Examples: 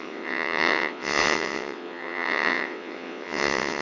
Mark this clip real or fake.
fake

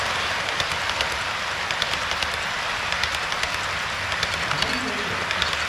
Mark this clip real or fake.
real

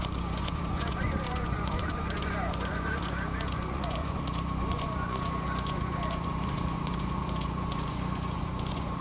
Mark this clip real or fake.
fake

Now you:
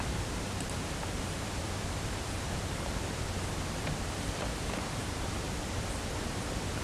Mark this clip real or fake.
fake